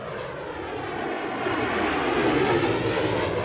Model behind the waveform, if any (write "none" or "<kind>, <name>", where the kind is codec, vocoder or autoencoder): none